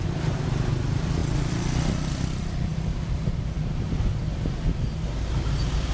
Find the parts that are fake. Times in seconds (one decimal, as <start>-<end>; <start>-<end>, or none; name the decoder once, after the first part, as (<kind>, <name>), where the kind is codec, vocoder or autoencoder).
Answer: 0.0-1.2 (vocoder, BigVGAN v2); 2.1-2.7; 5.3-5.9